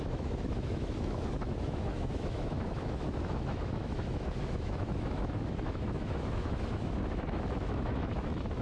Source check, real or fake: fake